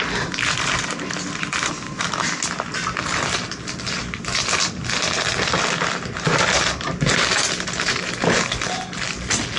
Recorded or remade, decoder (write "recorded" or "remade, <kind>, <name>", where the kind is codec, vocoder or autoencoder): recorded